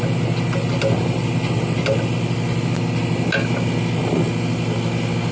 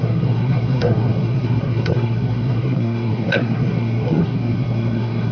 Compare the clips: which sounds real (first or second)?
first